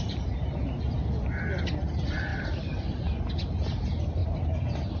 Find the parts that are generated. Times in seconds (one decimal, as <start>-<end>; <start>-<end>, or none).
2.3-3.0; 4.2-5.0